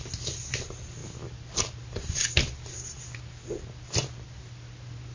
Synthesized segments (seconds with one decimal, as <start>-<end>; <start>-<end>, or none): none